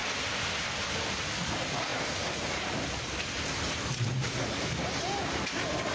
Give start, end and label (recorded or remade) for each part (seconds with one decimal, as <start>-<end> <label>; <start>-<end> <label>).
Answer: 0.0-1.9 recorded; 1.9-5.4 remade; 5.4-5.9 recorded